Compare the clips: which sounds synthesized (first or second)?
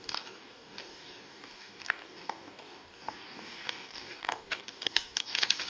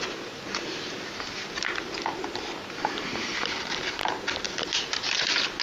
first